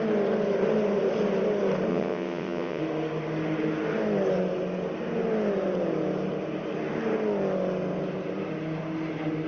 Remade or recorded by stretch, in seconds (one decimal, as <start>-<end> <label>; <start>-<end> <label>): 0.0-1.9 recorded; 1.9-2.8 remade; 2.8-9.5 recorded